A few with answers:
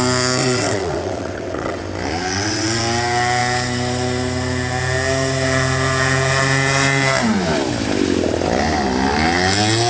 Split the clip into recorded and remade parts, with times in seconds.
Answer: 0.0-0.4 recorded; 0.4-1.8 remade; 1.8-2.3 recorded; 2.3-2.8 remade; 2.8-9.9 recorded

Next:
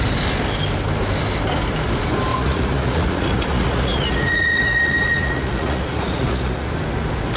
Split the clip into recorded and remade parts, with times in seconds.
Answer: 0.0-2.3 recorded; 2.3-6.7 remade; 6.7-7.4 recorded

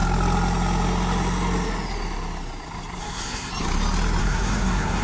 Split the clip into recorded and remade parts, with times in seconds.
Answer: 0.0-3.0 recorded; 3.0-3.5 remade; 3.5-4.2 recorded; 4.2-5.0 remade

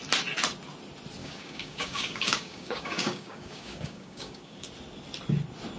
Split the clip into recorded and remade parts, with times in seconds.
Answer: 0.0-1.2 recorded; 1.2-4.7 remade; 4.7-5.8 recorded

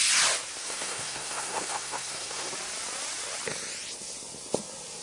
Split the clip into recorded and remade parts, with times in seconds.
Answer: 0.0-0.6 recorded; 0.6-2.5 remade; 2.5-5.0 recorded

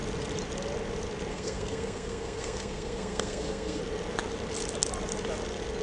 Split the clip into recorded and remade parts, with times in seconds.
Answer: 0.0-1.3 recorded; 1.3-3.8 remade; 3.8-5.8 recorded

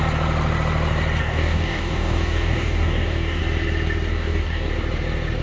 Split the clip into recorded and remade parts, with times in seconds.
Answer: 0.0-1.2 recorded; 1.2-3.4 remade; 3.4-4.1 recorded; 4.1-4.7 remade; 4.7-5.4 recorded

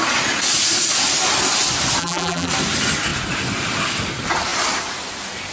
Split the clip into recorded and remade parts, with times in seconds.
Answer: 0.0-2.0 recorded; 2.0-2.5 remade; 2.5-5.5 recorded